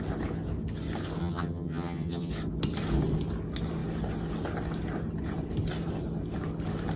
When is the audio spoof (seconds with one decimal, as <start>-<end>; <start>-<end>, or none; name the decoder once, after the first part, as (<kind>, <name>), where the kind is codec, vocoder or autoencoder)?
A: 1.2-2.3 (vocoder, HiFi-GAN)